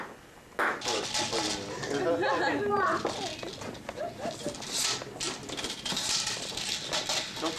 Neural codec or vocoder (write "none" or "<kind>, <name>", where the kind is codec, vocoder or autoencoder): none